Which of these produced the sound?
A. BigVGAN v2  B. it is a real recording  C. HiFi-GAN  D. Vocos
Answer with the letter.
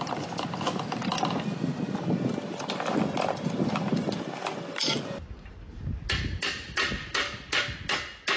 B